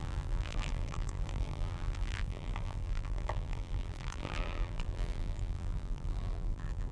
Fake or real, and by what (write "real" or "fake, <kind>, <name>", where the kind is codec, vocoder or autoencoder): fake, vocoder, BigVGAN v2